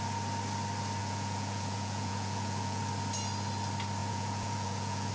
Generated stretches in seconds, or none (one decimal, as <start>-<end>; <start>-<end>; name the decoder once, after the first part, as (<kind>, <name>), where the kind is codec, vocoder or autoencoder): 1.0-2.8 (vocoder, Vocos); 4.0-5.1